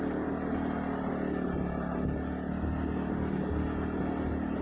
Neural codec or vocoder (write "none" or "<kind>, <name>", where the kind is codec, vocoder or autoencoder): none